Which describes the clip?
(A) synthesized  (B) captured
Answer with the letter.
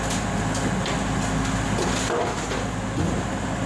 B